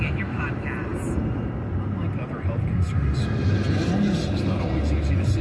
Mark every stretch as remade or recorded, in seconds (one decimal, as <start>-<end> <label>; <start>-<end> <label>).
0.0-5.4 recorded